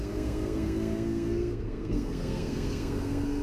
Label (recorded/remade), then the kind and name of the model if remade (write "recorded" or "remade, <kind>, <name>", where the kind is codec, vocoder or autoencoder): remade, codec, SNAC